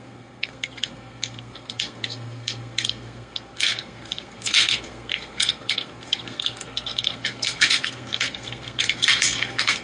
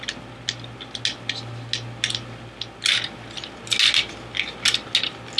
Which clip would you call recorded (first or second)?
second